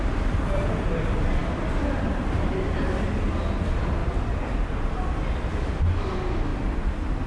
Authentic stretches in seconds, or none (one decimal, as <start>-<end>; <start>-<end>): 0.0-7.3